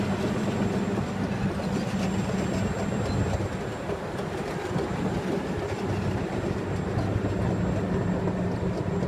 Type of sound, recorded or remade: recorded